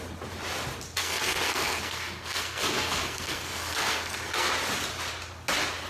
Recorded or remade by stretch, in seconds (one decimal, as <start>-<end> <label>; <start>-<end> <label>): 0.0-1.0 recorded; 1.0-4.5 remade; 4.5-5.9 recorded